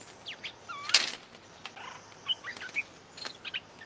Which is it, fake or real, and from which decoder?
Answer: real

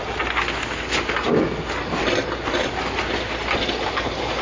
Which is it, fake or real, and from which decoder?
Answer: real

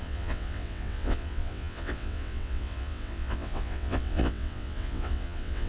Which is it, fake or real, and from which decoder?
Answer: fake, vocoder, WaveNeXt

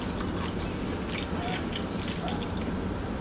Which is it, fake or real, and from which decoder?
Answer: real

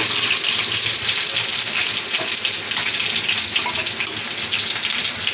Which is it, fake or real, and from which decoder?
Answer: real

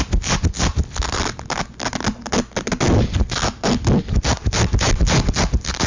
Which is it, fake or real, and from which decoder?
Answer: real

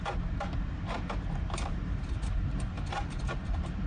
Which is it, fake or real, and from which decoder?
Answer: fake, vocoder, BigVGAN v2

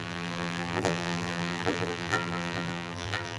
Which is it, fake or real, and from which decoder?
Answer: fake, vocoder, BigVGAN v2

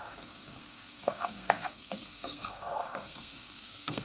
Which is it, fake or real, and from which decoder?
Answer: fake, codec, SNAC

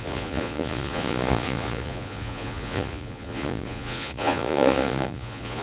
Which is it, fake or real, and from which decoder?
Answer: fake, vocoder, Vocos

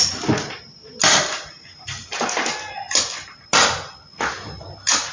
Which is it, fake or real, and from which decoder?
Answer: real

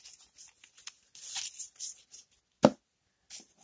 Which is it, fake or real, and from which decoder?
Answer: real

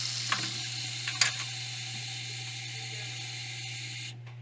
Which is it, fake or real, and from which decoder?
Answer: real